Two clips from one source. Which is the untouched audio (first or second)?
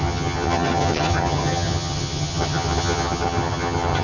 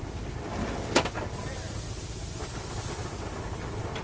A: second